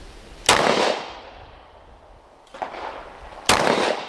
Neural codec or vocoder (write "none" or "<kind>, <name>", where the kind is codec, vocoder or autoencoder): none